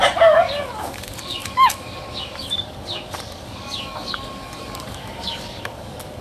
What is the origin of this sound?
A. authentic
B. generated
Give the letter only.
B